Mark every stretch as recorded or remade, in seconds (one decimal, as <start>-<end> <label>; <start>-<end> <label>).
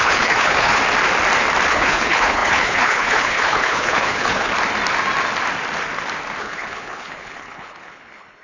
0.0-0.8 remade; 0.8-1.7 recorded; 1.7-4.5 remade; 4.5-6.4 recorded; 6.4-8.4 remade